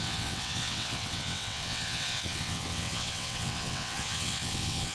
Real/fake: fake